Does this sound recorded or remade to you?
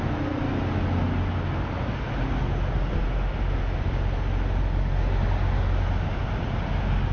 recorded